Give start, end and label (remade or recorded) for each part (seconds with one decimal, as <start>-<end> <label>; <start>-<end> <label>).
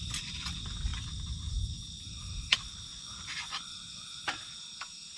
0.0-2.9 recorded; 2.9-4.2 remade; 4.2-5.2 recorded